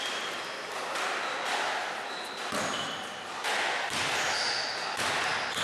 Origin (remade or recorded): recorded